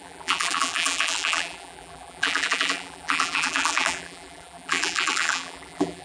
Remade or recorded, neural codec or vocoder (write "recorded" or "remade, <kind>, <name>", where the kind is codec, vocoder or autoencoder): remade, vocoder, BigVGAN v2